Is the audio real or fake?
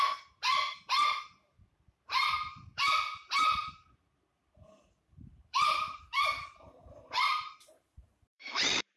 fake